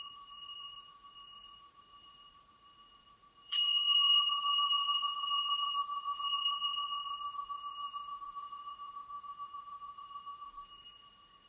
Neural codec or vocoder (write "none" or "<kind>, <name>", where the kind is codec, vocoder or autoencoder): vocoder, Vocos